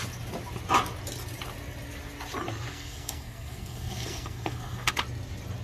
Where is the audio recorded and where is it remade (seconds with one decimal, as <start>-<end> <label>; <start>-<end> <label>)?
0.0-2.7 recorded; 2.7-4.9 remade; 4.9-5.6 recorded